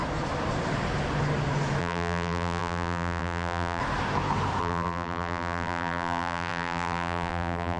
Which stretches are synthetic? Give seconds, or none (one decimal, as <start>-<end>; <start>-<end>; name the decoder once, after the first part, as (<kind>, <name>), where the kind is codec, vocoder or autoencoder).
1.8-3.8 (vocoder, BigVGAN v2); 4.6-7.8